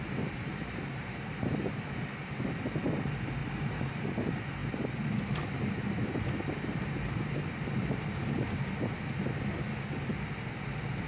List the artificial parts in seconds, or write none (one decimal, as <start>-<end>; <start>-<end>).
0.5-1.7; 3.4-4.1